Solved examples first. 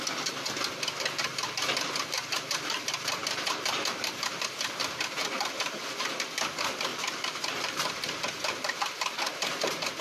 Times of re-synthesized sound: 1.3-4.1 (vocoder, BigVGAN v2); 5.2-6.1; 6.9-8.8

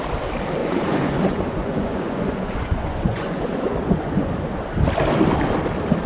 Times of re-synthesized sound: 0.6-4.3 (vocoder, Vocos)

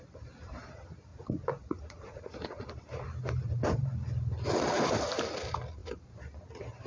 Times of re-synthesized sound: 1.1-2.6 (vocoder, Vocos)

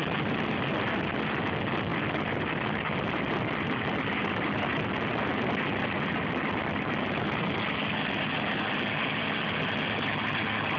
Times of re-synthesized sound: none

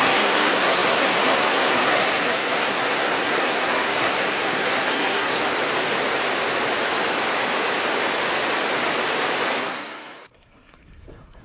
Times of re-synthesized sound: 0.0-5.5 (codec, SNAC); 9.6-11.4